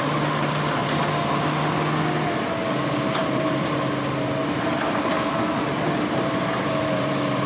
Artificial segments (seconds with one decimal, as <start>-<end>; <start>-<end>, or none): 3.2-3.7; 4.4-7.5